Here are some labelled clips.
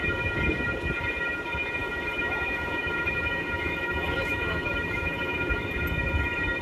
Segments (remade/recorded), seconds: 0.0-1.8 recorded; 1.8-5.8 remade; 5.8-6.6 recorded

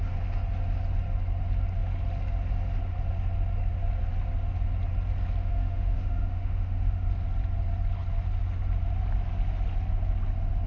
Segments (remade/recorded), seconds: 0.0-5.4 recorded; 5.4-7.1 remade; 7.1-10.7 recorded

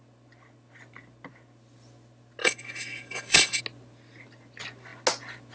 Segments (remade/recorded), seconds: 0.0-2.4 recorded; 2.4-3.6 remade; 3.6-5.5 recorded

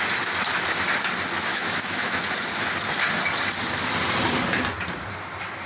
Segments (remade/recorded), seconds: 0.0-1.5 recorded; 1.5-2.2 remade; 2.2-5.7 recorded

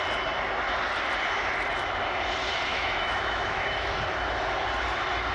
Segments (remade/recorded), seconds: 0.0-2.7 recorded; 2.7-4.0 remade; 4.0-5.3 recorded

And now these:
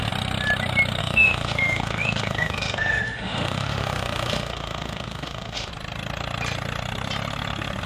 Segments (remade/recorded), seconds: 0.0-1.0 recorded; 1.0-5.7 remade; 5.7-7.9 recorded